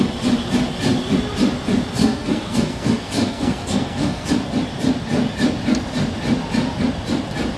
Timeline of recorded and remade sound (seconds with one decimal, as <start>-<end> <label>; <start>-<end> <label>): 0.0-2.0 recorded; 2.0-4.3 remade; 4.3-7.6 recorded